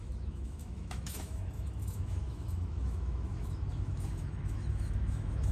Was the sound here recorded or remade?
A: remade